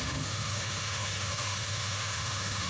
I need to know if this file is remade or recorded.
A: remade